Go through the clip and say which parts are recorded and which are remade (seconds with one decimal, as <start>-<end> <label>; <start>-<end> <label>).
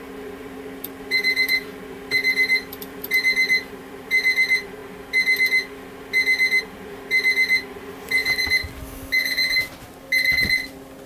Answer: 0.0-4.8 remade; 4.8-6.6 recorded; 6.6-8.2 remade; 8.2-11.1 recorded